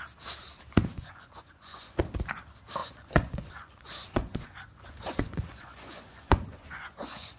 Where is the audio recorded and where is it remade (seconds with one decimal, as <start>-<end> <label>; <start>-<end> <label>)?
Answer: 0.0-0.8 recorded; 0.8-2.0 remade; 2.0-2.8 recorded; 2.8-7.4 remade